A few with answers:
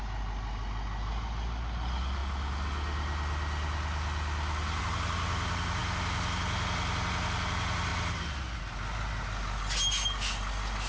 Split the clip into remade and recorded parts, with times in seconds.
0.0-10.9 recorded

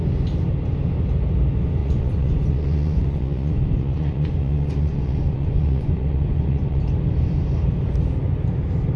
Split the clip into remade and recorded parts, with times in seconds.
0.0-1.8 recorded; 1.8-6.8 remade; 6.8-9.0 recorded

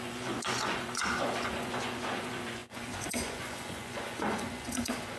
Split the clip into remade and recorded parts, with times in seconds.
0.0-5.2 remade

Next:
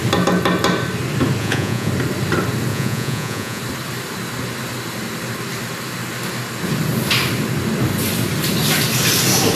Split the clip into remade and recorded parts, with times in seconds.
0.0-1.4 recorded; 1.4-1.9 remade; 1.9-2.7 recorded; 2.7-3.6 remade; 3.6-9.6 recorded